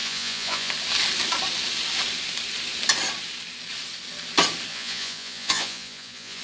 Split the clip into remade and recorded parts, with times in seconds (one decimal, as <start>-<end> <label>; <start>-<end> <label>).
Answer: 0.0-0.7 remade; 0.7-4.7 recorded; 4.7-6.4 remade